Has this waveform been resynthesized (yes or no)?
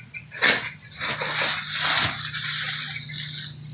no